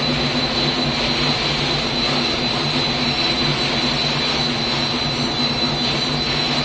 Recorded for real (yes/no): yes